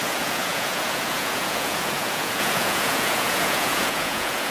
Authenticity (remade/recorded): remade